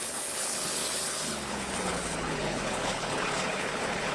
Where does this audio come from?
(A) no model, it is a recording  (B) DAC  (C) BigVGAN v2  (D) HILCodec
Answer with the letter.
D